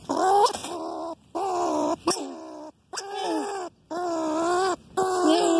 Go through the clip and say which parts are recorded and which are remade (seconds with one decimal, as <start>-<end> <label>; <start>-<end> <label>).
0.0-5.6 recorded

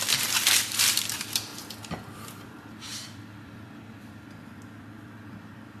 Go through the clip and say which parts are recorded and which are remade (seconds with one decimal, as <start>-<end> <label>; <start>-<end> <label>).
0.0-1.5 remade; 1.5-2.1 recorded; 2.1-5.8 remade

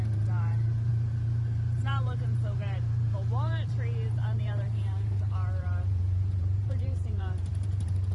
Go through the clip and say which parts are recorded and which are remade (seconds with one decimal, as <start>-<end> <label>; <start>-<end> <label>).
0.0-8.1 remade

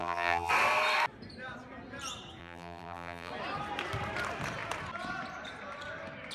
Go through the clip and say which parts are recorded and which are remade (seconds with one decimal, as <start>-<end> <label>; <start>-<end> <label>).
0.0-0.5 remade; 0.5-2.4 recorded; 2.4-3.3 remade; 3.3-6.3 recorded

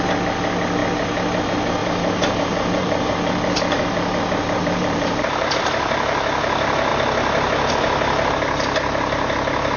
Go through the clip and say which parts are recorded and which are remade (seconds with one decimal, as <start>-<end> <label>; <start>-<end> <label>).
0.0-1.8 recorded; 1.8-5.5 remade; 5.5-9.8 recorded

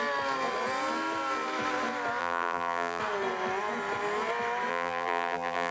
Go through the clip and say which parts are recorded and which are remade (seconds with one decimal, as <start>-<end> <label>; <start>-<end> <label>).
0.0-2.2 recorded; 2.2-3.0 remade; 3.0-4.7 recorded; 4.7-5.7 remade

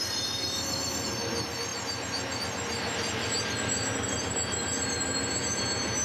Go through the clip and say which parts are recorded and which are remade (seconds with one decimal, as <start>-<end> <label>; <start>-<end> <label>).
0.0-6.0 recorded